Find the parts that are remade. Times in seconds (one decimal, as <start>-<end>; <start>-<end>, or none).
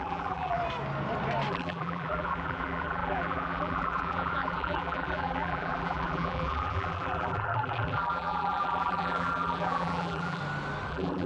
0.0-0.6; 1.5-10.4; 10.9-11.3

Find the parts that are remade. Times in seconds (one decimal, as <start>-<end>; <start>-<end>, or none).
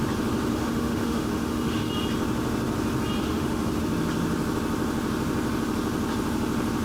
0.5-1.9; 3.2-3.8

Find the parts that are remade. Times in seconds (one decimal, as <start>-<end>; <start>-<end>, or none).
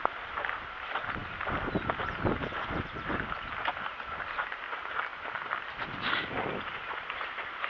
none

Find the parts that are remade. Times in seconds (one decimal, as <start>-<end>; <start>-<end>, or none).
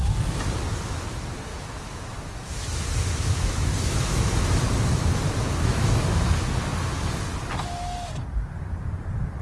1.5-6.3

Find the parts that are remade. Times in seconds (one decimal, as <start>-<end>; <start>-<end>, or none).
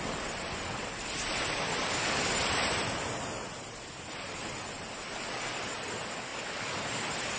none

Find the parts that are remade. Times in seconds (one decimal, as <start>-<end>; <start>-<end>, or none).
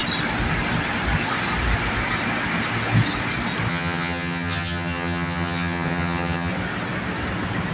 3.7-6.5